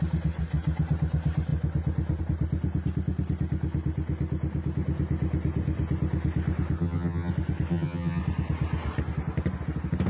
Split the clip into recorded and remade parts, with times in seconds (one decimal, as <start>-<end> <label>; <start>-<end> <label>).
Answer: 0.0-6.8 recorded; 6.8-7.3 remade; 7.3-7.7 recorded; 7.7-8.2 remade; 8.2-10.1 recorded